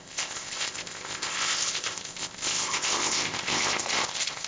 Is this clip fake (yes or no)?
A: yes